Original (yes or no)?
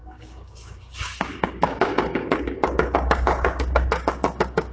no